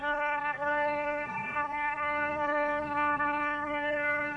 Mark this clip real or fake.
fake